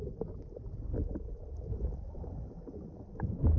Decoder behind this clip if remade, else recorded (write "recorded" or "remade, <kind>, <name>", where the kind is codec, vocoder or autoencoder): recorded